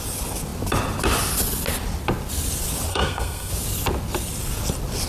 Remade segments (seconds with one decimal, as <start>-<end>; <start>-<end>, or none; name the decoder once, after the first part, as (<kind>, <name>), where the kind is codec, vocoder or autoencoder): 2.9-3.5 (codec, SNAC)